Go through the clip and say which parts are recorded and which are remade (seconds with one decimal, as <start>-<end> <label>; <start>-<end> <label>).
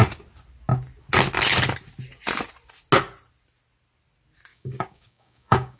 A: 0.0-4.5 recorded; 4.5-5.8 remade